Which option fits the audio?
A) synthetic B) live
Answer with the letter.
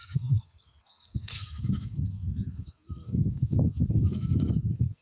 A